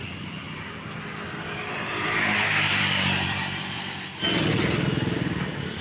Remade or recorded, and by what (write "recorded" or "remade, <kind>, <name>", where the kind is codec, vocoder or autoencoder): remade, vocoder, BigVGAN v2